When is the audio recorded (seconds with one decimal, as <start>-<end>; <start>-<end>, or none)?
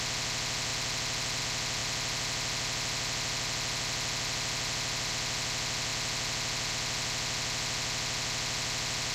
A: 0.0-1.8; 5.1-9.1